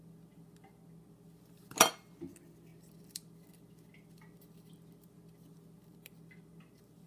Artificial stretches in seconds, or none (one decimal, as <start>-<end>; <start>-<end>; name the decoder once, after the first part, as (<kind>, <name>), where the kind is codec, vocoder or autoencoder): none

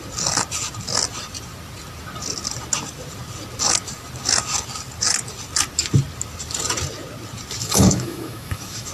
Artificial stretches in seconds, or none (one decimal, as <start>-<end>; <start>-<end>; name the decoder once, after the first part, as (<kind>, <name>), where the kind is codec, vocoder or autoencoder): 7.6-8.9 (autoencoder, DAC-VAE)

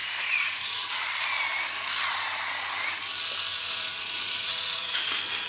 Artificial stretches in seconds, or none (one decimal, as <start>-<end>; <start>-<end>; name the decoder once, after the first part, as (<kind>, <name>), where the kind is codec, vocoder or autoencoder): 0.0-0.9 (vocoder, Vocos); 3.5-5.0